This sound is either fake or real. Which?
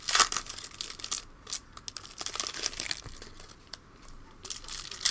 real